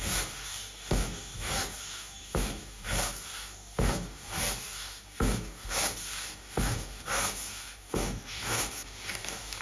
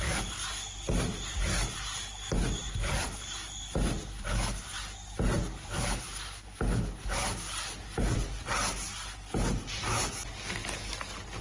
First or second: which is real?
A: second